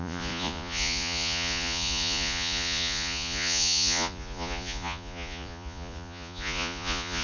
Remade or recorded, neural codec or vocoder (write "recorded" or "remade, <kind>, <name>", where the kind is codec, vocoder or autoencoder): remade, vocoder, Vocos